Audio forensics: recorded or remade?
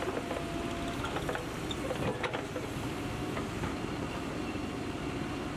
recorded